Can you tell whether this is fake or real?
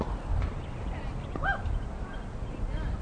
real